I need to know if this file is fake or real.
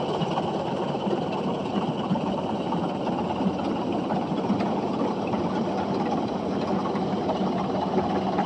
real